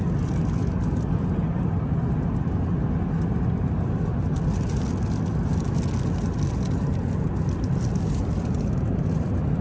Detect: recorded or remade recorded